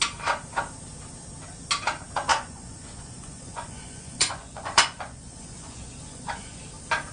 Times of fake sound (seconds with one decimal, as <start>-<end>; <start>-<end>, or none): 2.3-6.6

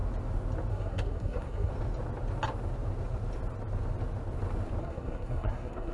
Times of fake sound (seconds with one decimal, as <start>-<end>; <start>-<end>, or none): 0.7-1.7; 4.8-5.9

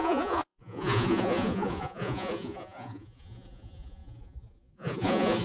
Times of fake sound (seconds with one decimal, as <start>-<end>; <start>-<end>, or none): 0.0-5.4

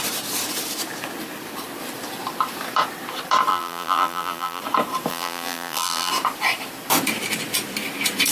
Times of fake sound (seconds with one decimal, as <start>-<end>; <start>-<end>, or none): 3.5-4.6; 5.1-6.1

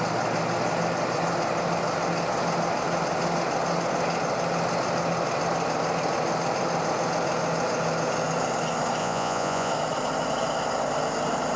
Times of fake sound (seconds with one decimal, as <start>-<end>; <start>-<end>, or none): 9.0-9.7

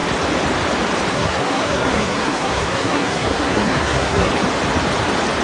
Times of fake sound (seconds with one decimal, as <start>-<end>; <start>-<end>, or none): 1.1-4.3